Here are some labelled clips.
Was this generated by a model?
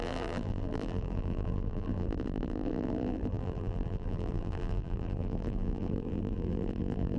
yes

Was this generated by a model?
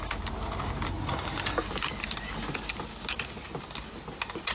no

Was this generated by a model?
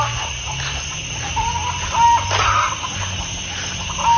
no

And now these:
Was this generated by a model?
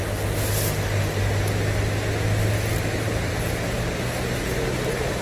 no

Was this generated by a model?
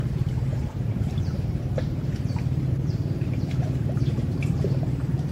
yes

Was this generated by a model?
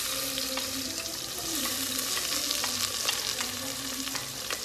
no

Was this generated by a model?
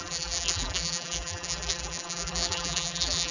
yes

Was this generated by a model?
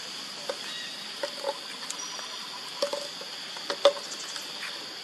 no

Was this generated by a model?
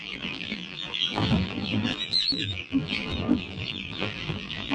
yes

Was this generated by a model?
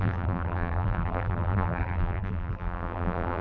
yes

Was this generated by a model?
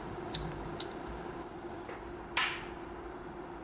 no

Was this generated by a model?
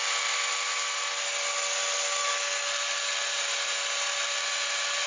no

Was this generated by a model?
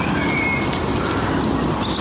no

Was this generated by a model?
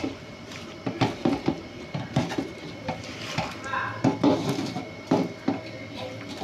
yes